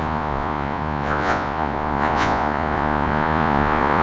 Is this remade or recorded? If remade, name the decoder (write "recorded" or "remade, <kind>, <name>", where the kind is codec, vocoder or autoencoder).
remade, vocoder, Vocos